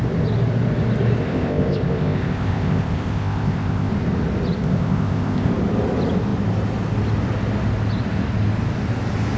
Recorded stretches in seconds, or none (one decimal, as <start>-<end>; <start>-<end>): 0.0-1.2; 3.9-4.6; 5.5-9.4